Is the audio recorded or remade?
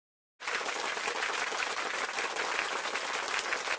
recorded